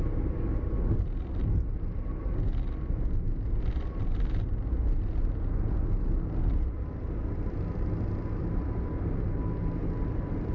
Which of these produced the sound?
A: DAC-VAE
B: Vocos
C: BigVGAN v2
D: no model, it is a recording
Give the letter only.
D